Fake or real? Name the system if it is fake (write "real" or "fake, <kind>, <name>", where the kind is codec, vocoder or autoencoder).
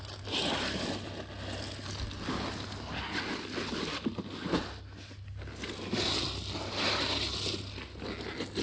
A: real